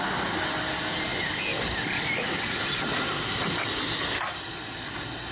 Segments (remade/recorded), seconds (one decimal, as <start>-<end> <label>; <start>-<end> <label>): 0.0-5.3 recorded